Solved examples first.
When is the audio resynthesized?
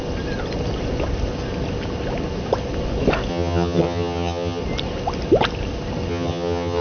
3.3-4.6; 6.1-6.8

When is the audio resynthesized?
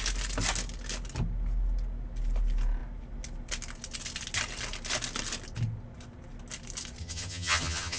7.0-8.0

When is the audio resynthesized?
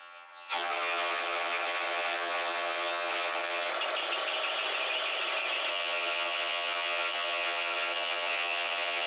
0.0-3.7; 5.7-9.1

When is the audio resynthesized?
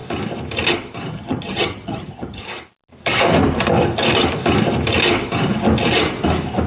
1.1-2.4